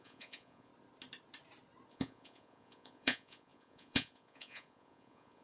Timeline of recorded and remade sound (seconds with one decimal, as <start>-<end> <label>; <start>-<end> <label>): 0.0-0.7 remade; 0.7-1.9 recorded; 1.9-5.4 remade